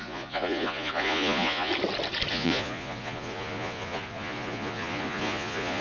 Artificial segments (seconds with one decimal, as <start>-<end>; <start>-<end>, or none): 0.0-1.7; 2.3-5.8